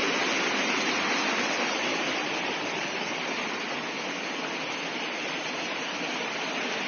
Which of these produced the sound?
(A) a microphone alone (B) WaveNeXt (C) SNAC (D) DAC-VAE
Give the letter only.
A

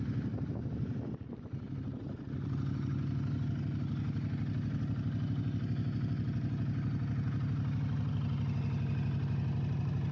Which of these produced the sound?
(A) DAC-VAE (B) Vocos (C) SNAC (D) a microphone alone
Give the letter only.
D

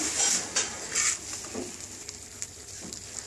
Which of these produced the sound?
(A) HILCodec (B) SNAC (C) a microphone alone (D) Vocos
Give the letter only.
C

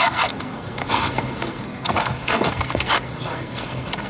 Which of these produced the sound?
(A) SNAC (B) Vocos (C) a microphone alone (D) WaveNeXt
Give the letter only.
A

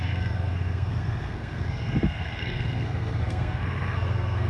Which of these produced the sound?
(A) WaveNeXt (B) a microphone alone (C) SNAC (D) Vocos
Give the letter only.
C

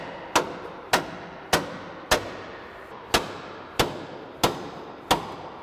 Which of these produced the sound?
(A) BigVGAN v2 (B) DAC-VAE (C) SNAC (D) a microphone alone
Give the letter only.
D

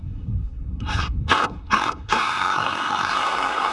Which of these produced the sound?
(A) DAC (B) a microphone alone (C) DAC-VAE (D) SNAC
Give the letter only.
D